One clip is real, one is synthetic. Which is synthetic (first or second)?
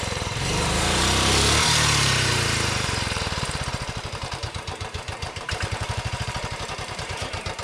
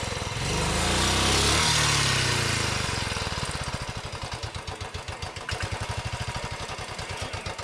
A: first